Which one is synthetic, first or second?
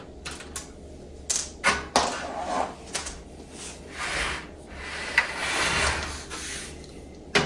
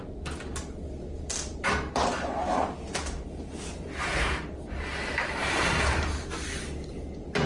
second